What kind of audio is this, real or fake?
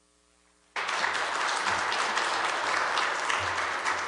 real